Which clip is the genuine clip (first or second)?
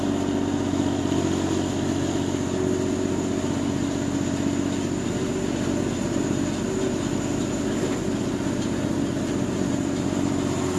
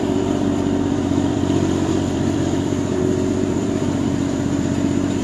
first